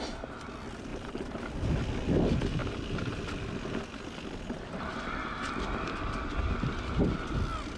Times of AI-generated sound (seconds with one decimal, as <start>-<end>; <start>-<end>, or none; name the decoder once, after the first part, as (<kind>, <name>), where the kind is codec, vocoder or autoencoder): none